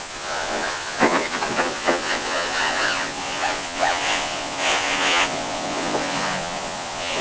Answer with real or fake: fake